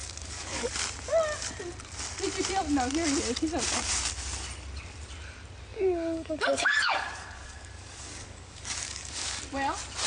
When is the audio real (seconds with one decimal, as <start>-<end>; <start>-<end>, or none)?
0.7-5.7; 9.4-10.1